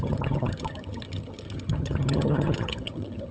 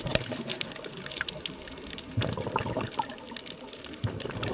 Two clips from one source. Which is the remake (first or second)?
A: first